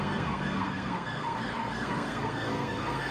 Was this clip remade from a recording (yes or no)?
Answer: yes